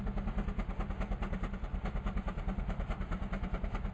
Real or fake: real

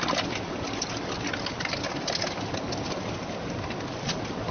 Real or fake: real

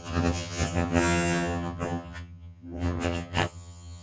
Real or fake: fake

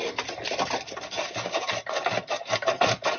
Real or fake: real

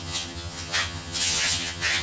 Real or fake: fake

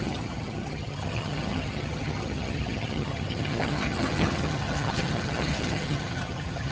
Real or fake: fake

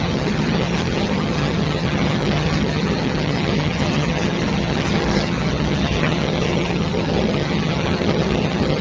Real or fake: fake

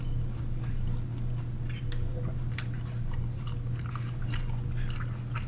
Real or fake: real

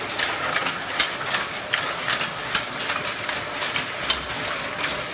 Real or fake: real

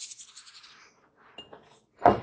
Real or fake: real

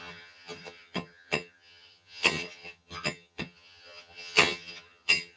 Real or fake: fake